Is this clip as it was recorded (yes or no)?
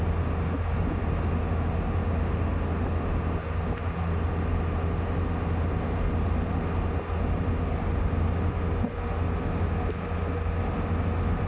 yes